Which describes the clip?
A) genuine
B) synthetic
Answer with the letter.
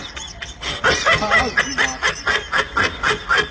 A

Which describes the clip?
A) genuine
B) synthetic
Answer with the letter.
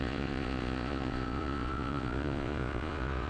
B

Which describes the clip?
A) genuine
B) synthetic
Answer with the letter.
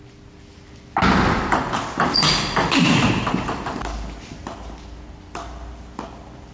A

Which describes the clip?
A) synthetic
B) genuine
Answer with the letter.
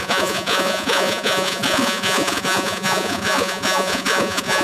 A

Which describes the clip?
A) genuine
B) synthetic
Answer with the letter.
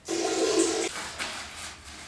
A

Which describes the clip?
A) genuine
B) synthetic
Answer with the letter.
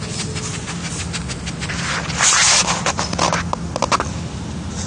A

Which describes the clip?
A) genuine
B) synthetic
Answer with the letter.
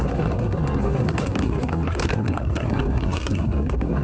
B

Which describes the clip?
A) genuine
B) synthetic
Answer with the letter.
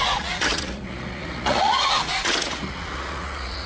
B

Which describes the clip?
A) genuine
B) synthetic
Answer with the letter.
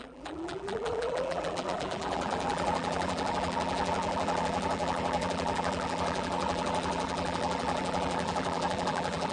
B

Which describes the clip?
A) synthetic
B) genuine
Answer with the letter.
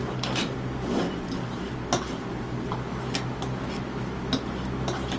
B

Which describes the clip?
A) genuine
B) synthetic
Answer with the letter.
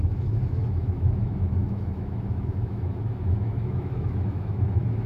B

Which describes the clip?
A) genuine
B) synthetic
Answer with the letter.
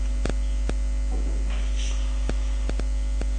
A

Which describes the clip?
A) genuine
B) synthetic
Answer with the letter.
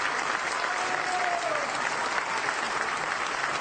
A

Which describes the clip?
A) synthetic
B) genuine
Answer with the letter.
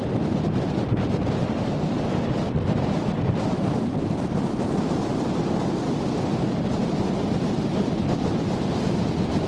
B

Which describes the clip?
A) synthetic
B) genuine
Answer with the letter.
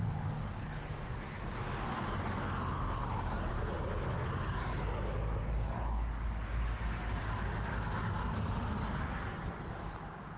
B